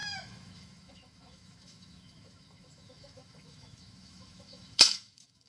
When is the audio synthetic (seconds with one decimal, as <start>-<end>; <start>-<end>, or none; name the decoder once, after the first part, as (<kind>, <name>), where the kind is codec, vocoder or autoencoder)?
0.0-5.5 (autoencoder, DAC-VAE)